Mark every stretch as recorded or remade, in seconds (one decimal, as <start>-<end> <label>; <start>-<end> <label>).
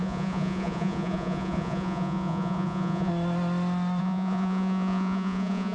0.0-3.1 remade; 3.1-4.0 recorded; 4.0-5.7 remade